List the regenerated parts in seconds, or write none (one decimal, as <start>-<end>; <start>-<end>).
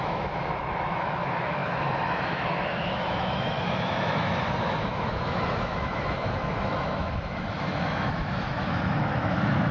0.0-9.7